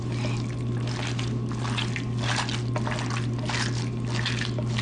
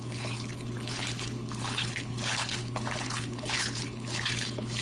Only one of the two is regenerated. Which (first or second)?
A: second